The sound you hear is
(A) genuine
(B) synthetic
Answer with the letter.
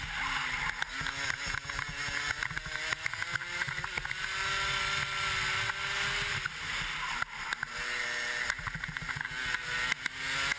A